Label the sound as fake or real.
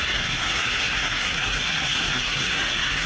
fake